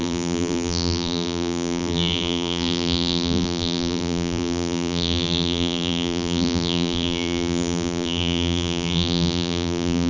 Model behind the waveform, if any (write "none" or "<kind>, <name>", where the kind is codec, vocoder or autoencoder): vocoder, BigVGAN v2